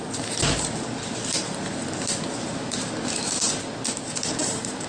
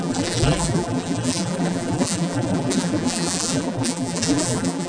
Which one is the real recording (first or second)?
first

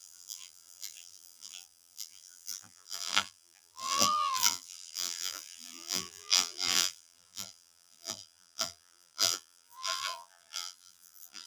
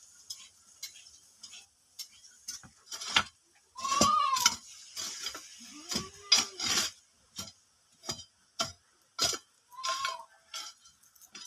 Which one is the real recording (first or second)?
second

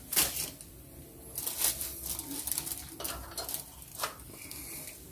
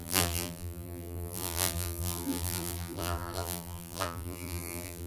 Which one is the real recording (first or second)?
first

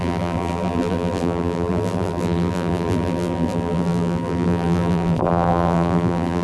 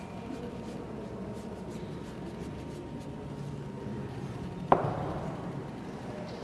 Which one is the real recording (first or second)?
second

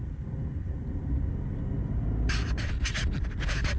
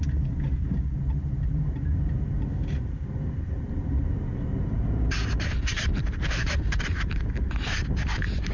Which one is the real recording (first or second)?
first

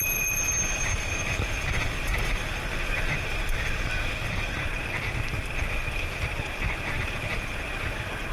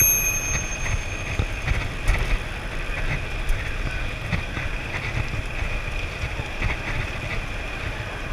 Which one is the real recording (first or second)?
second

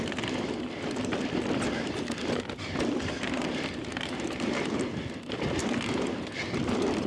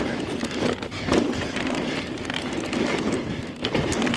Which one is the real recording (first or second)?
second